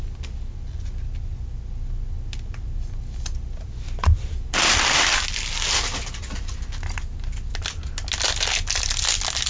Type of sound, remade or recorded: recorded